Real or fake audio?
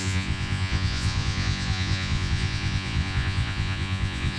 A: fake